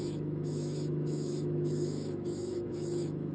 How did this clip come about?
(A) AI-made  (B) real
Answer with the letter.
A